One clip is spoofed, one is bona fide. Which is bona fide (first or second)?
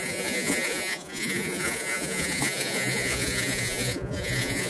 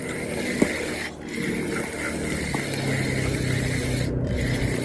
second